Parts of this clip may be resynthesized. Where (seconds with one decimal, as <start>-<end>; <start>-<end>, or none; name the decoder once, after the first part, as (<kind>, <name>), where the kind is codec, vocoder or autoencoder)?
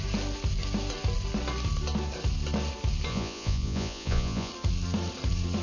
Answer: 3.1-4.5 (vocoder, Vocos)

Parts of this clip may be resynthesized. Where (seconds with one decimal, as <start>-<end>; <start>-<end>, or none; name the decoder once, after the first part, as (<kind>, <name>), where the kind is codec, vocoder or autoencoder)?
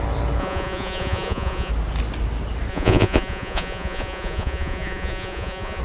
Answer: 0.4-1.7 (vocoder, Vocos); 2.7-5.8